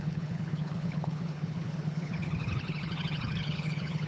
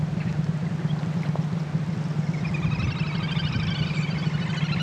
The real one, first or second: second